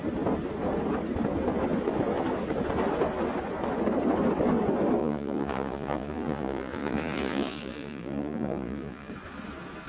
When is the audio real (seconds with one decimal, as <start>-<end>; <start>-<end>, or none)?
0.0-5.0; 9.1-9.9

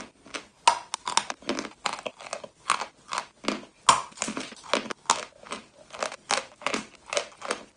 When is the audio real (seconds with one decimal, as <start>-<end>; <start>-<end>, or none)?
0.0-7.8

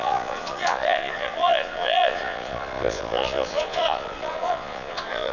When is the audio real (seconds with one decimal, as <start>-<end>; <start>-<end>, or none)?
none

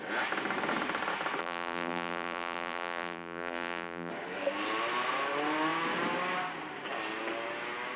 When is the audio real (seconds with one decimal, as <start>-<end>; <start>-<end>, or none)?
0.0-1.4; 4.1-8.0

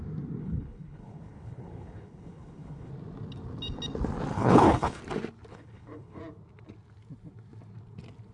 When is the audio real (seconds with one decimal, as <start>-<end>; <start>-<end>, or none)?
0.0-0.4; 2.9-4.3; 5.0-5.5; 6.2-8.3

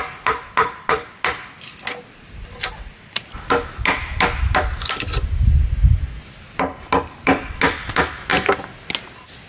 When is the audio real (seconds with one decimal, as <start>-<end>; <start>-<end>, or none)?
0.0-9.5